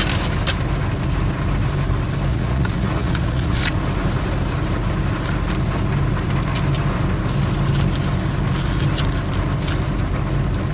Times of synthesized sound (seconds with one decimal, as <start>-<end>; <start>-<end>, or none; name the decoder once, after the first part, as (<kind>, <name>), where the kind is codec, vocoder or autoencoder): 2.3-3.6 (vocoder, Vocos)